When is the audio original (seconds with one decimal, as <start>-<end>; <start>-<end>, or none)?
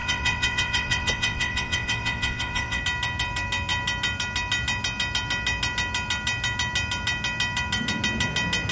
2.8-8.7